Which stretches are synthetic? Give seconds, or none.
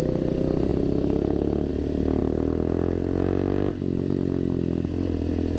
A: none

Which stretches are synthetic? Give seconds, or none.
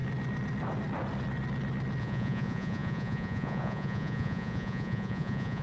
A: 2.0-5.6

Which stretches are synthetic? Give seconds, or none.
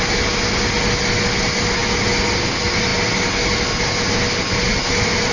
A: none